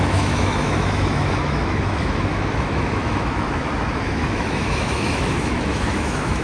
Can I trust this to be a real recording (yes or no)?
no